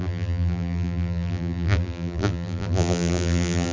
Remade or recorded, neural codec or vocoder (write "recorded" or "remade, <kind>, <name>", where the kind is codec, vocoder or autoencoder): remade, vocoder, BigVGAN v2